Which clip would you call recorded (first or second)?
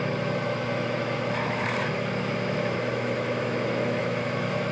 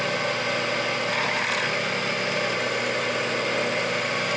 second